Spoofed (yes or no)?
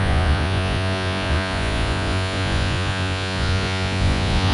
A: yes